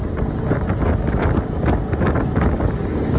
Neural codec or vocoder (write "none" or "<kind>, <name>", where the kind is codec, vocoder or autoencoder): none